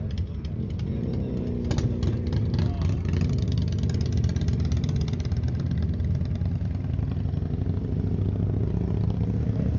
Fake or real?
real